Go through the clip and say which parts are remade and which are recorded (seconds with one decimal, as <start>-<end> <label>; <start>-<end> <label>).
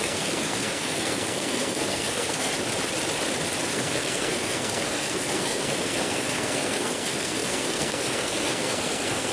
0.0-2.5 remade; 2.5-3.7 recorded; 3.7-9.3 remade